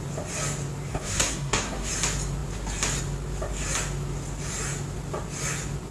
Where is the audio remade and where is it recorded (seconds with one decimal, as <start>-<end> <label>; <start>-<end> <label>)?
0.0-0.9 recorded; 0.9-1.9 remade; 1.9-5.9 recorded